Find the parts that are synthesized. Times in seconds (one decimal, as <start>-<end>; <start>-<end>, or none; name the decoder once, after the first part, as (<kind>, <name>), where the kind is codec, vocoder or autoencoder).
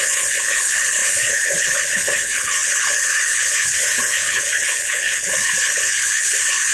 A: 0.0-6.7 (codec, HILCodec)